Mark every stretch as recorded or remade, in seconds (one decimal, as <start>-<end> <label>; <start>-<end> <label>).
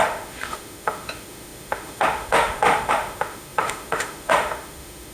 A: 0.0-5.1 remade